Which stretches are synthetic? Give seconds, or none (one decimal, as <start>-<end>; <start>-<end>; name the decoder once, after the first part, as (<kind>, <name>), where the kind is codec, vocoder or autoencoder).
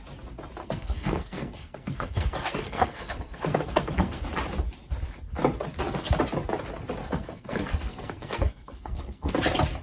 0.6-4.2 (codec, SNAC); 7.0-9.3